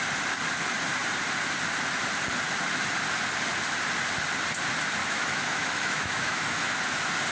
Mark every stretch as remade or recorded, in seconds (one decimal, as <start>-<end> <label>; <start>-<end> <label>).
0.0-5.0 recorded; 5.0-6.7 remade; 6.7-7.3 recorded